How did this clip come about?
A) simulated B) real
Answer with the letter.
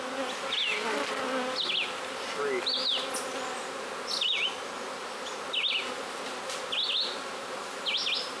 B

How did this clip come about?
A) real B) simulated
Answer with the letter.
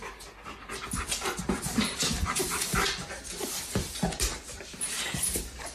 A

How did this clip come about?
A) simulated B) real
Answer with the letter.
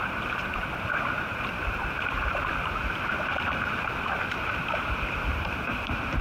A